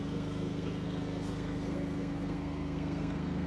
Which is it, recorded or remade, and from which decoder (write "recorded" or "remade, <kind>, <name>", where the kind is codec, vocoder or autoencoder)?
remade, codec, SNAC